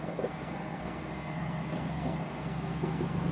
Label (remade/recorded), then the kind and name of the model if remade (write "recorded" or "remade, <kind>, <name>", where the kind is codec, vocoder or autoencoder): remade, codec, SNAC